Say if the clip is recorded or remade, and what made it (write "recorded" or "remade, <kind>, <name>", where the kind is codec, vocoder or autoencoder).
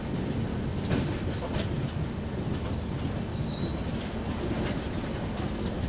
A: recorded